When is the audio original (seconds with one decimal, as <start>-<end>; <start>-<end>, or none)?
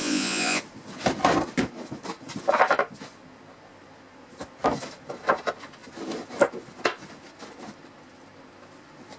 0.6-9.2